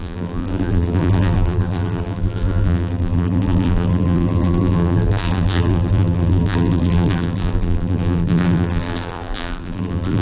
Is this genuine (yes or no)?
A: no